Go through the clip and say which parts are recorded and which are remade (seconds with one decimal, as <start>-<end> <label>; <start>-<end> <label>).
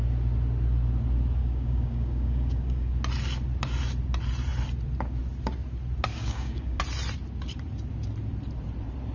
0.0-1.4 recorded; 1.4-2.9 remade; 2.9-6.1 recorded; 6.1-6.8 remade; 6.8-9.1 recorded